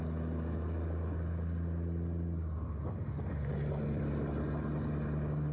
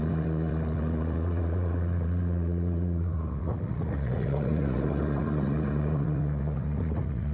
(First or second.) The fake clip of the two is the second